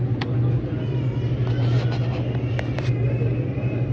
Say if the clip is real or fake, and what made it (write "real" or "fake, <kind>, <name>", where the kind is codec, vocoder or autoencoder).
real